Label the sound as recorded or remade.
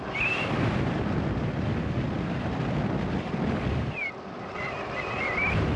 recorded